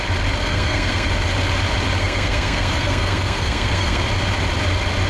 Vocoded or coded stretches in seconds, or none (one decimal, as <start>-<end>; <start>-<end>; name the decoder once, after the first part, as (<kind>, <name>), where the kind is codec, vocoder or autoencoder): 0.4-1.1 (codec, SNAC); 2.0-4.0